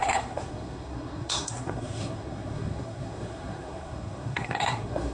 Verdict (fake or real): fake